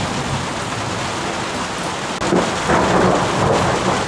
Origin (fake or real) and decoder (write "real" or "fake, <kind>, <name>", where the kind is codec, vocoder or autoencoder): real